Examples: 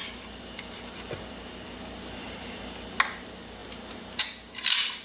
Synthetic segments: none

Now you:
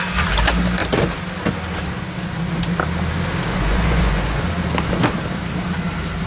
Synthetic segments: 3.5-4.4

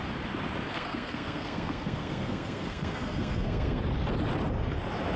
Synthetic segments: 0.7-3.8

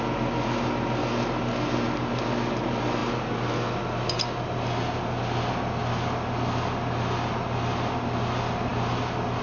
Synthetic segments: none

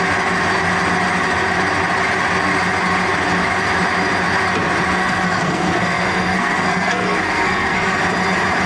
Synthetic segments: 5.0-8.0

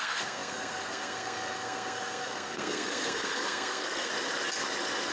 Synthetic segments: 0.0-4.1

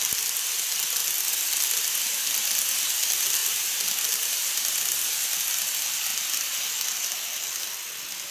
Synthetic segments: none